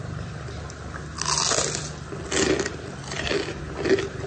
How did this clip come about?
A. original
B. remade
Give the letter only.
A